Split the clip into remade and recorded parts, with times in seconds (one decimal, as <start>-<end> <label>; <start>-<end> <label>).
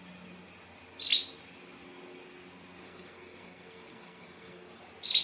0.0-2.8 recorded; 2.8-4.8 remade; 4.8-5.2 recorded